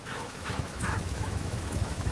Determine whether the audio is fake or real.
fake